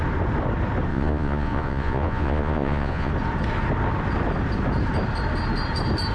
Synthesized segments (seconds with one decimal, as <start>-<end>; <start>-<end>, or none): 0.9-3.1